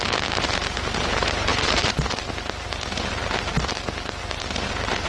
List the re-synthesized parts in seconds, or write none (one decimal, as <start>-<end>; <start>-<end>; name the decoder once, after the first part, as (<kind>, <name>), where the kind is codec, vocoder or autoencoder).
0.0-3.2 (vocoder, BigVGAN v2); 4.2-5.1